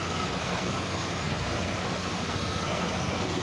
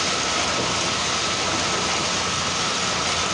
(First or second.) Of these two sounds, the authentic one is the second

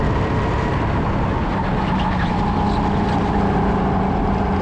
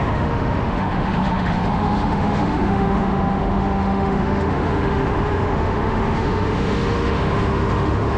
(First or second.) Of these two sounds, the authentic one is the first